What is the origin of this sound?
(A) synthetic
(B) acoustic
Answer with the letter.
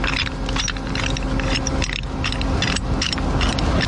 B